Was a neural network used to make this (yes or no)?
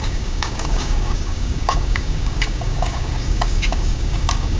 yes